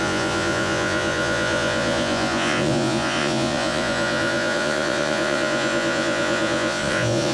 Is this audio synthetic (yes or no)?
yes